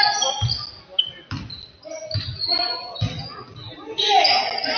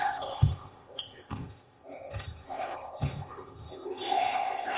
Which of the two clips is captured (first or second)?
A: first